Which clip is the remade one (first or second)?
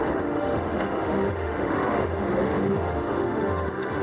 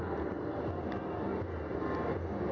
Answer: first